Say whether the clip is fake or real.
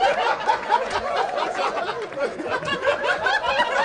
fake